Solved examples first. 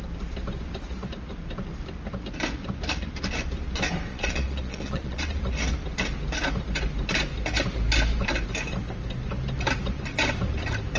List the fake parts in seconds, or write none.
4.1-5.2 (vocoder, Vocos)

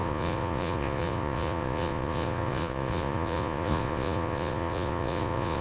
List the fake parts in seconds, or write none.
0.0-5.6 (vocoder, Vocos)

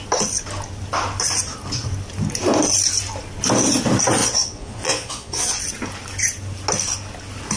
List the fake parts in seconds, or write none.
4.2-5.6 (vocoder, Vocos)

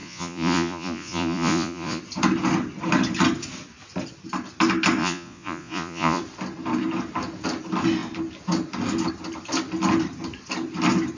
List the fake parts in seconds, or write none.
0.0-2.0 (vocoder, Vocos); 5.0-6.2

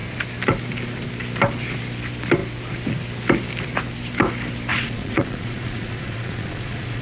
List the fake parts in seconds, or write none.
4.7-7.0 (vocoder, Vocos)

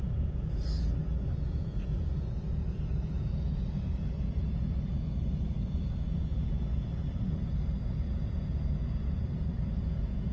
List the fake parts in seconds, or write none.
0.0-10.3 (vocoder, Vocos)

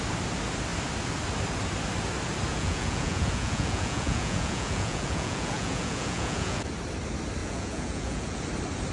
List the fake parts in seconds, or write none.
2.5-6.7 (vocoder, Vocos); 7.4-8.4